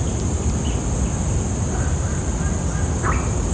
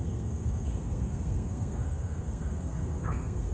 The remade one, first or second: second